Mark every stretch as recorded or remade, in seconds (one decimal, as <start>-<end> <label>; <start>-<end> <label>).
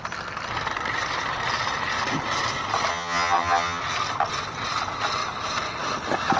0.0-2.9 recorded; 2.9-3.8 remade; 3.8-6.4 recorded